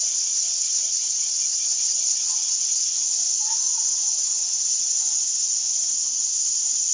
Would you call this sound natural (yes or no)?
no